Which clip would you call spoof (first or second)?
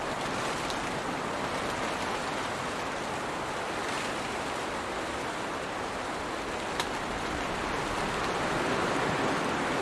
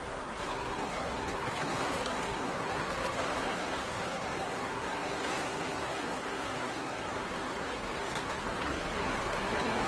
second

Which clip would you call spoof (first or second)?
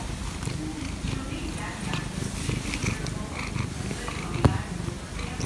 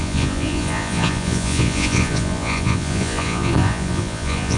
second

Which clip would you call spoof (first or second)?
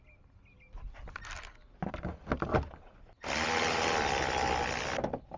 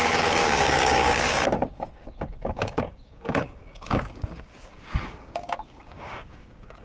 second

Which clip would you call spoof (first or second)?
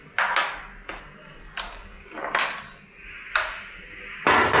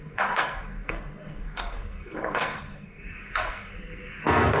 second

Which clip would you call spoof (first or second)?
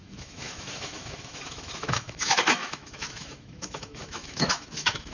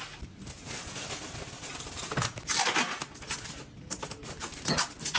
first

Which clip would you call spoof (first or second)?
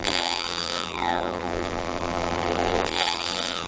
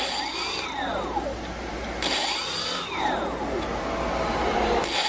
first